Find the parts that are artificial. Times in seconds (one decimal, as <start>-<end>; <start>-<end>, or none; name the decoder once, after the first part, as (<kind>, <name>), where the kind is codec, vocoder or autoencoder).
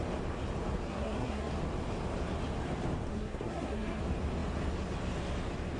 0.9-1.5 (codec, SNAC); 3.1-4.0